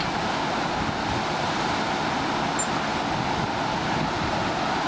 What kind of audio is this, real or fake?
real